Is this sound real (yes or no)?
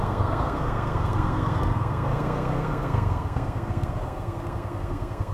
no